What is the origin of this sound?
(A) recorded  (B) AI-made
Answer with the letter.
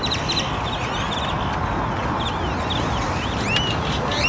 A